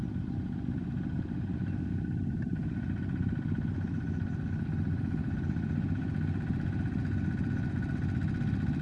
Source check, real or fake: real